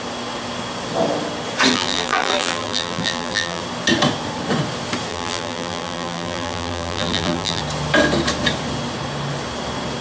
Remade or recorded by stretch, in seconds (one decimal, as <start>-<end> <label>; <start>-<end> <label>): 0.0-1.7 recorded; 1.7-3.6 remade; 3.6-5.1 recorded; 5.1-7.6 remade; 7.6-10.0 recorded